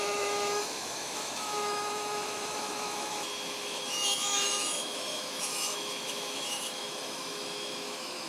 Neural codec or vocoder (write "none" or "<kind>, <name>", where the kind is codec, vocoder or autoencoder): autoencoder, DAC-VAE